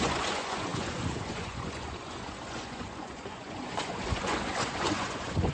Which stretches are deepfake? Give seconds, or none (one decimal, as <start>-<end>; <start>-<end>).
0.0-5.5